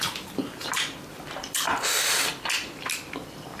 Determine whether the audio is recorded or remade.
remade